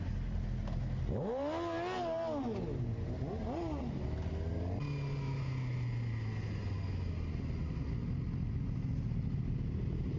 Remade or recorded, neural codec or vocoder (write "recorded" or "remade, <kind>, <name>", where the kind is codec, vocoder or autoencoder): recorded